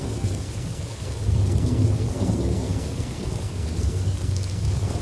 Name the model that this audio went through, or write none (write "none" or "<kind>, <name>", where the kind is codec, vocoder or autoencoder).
codec, SNAC